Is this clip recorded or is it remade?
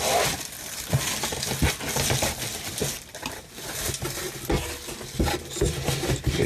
recorded